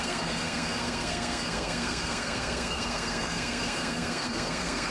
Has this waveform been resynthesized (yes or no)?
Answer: yes